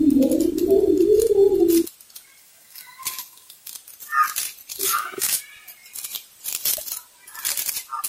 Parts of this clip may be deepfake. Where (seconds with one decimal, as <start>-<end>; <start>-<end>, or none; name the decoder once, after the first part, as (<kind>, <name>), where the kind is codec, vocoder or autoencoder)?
2.4-3.7 (codec, DAC); 4.7-5.4